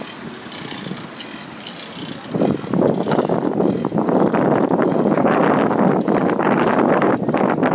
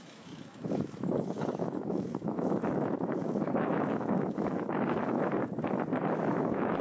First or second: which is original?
first